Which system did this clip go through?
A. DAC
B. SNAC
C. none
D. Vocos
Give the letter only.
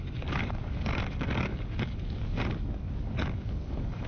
A